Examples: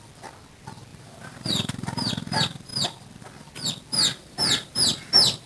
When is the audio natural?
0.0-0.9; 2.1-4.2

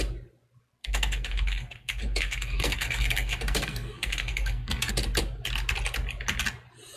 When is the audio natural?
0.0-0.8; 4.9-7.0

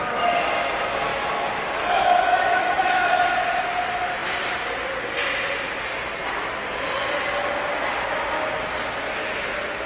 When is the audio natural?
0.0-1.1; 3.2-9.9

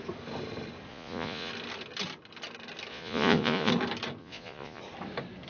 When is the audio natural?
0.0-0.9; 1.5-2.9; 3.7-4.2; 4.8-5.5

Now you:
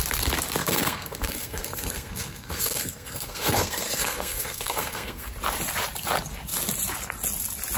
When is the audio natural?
0.0-0.6; 5.3-7.8